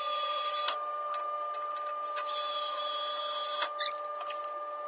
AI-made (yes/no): no